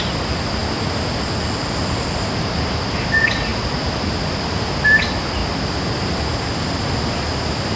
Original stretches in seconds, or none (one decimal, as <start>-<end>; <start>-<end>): 0.0-7.8